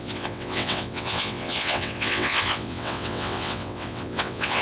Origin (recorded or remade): remade